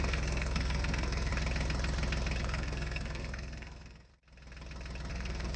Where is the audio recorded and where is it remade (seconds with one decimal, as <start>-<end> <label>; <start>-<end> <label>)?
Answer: 0.0-1.3 remade; 1.3-2.4 recorded; 2.4-4.1 remade; 4.1-5.1 recorded; 5.1-5.6 remade